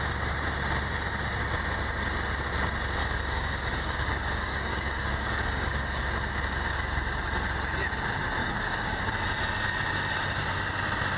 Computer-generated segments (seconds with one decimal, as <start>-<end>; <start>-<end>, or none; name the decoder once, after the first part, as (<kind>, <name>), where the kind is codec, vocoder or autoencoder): 3.0-6.0 (codec, DAC); 8.4-9.0